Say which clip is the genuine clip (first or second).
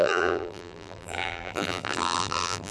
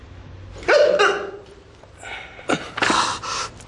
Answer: second